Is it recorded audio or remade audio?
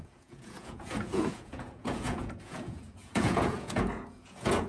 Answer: remade